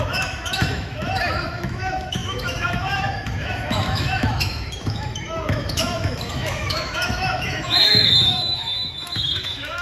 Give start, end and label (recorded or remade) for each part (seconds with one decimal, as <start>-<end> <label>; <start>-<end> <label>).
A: 0.0-9.8 remade